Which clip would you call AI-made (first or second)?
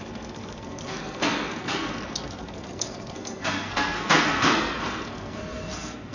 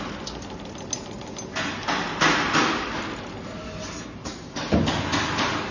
first